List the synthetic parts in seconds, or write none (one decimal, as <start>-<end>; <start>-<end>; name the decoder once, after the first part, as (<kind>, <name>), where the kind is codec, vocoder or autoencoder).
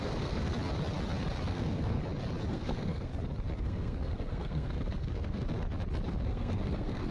0.0-0.5 (codec, SNAC); 1.5-2.0; 2.5-3.1; 3.6-5.5; 6.1-7.1